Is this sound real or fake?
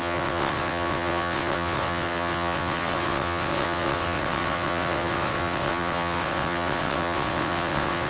fake